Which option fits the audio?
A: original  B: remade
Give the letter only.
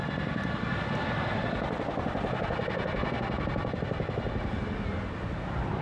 A